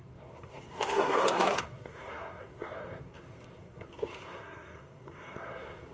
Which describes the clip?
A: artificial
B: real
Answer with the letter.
A